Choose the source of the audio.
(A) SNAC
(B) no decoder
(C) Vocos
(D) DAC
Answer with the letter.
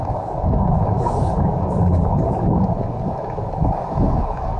D